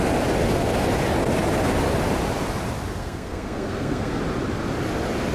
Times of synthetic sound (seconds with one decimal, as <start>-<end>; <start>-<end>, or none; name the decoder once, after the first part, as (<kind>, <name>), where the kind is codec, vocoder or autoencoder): 3.0-4.2 (codec, SNAC)